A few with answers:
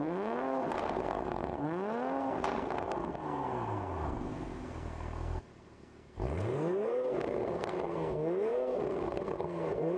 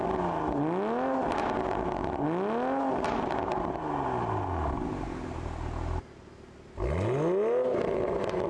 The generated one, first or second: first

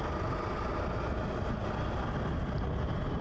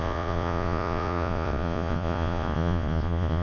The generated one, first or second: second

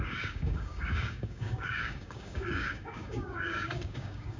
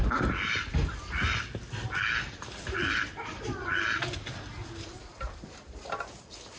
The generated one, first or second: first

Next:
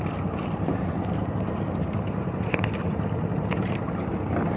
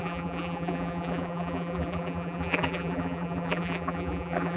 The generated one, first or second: second